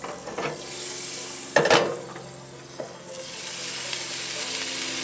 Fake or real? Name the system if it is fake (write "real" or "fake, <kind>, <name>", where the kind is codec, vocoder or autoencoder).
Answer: real